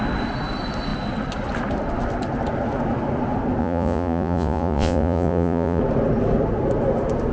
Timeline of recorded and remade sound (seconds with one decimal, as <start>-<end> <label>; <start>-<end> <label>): 0.0-3.6 recorded; 3.6-5.8 remade; 5.8-7.3 recorded